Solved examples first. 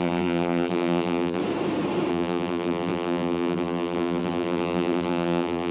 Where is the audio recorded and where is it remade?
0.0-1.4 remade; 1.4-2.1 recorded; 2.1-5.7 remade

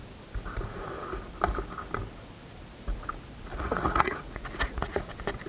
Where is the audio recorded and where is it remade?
0.0-3.5 recorded; 3.5-5.1 remade; 5.1-5.5 recorded

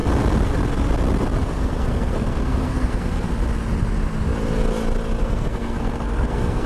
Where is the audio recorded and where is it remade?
0.0-1.4 recorded; 1.4-3.3 remade; 3.3-5.2 recorded; 5.2-6.7 remade

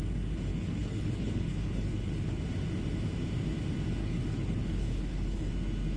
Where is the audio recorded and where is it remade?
0.0-0.5 recorded; 0.5-2.4 remade; 2.4-4.0 recorded; 4.0-5.5 remade; 5.5-6.0 recorded

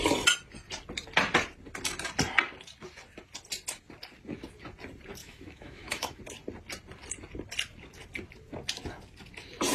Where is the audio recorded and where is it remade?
0.0-5.2 recorded; 5.2-6.2 remade; 6.2-9.7 recorded

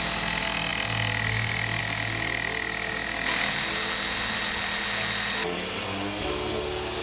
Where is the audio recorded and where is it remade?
0.0-7.0 recorded

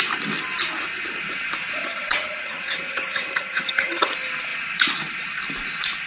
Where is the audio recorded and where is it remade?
0.0-1.8 recorded; 1.8-4.1 remade; 4.1-6.1 recorded

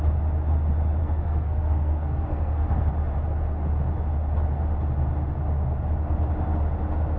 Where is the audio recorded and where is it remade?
0.0-1.0 recorded; 1.0-2.9 remade; 2.9-7.2 recorded